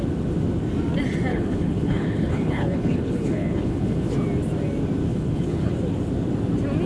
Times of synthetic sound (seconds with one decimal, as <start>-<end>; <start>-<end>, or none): 1.3-4.1; 5.1-5.7

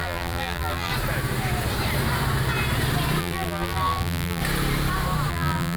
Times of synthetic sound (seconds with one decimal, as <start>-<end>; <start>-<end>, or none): 0.0-0.9; 3.2-4.4; 5.3-5.8